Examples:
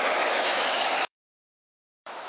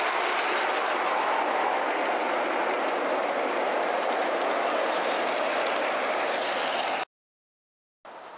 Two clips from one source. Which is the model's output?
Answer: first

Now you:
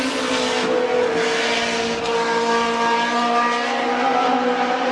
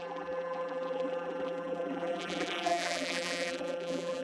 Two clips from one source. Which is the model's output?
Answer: second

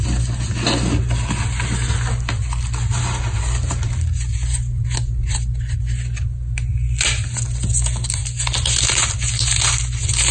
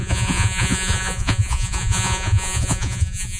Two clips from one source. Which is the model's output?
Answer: second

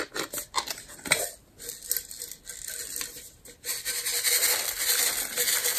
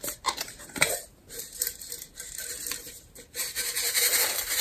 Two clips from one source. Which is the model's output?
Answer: second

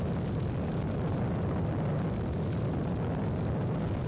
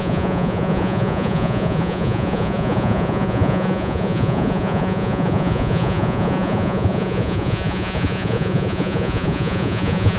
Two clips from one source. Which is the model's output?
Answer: second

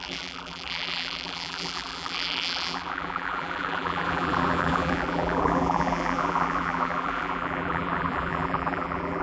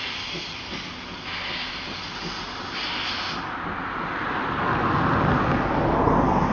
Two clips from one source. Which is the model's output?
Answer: first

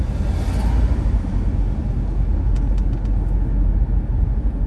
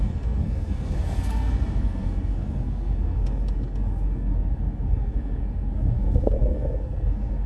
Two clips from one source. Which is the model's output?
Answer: second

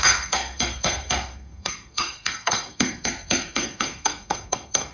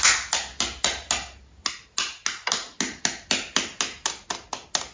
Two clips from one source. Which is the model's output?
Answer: first